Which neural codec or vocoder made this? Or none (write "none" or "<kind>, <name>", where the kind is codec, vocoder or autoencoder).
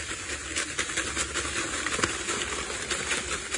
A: none